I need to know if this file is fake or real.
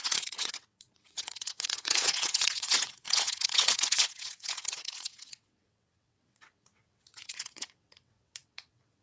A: fake